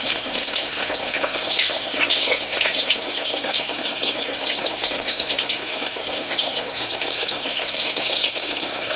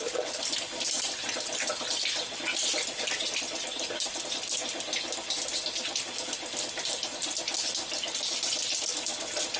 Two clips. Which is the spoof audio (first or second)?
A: first